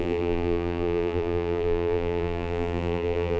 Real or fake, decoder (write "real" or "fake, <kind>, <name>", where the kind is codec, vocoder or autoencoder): fake, vocoder, BigVGAN v2